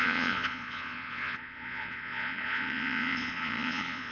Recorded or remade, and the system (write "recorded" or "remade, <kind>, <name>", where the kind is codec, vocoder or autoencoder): remade, vocoder, Vocos